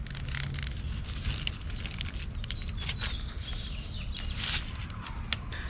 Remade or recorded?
recorded